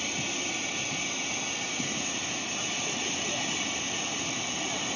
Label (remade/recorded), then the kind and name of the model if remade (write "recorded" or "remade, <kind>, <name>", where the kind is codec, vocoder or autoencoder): recorded